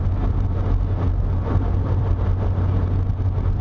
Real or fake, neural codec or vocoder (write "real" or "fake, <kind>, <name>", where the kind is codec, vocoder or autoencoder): real